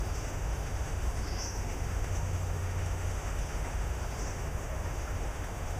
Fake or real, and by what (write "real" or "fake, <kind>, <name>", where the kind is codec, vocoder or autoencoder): fake, autoencoder, DAC-VAE